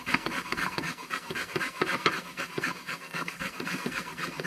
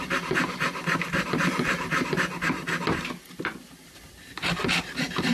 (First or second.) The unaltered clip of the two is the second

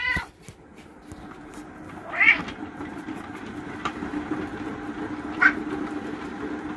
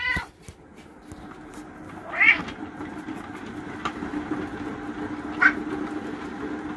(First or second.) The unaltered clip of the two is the second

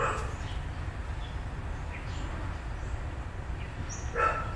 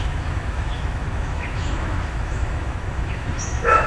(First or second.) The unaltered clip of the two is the first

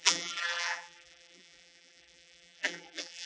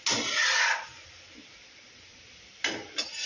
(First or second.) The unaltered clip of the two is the second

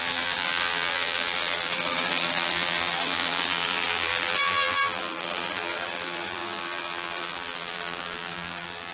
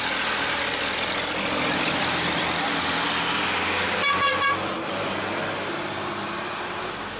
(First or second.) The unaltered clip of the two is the second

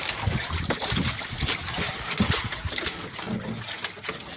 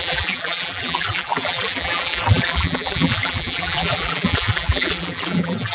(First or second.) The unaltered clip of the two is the first